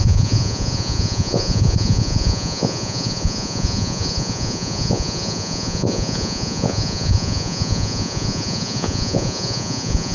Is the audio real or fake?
fake